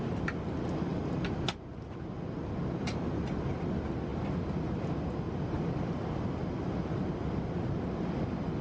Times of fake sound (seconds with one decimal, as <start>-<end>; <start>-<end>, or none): none